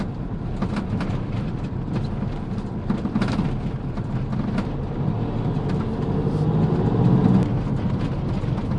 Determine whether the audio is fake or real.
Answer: real